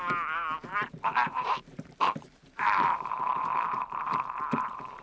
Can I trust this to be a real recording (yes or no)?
no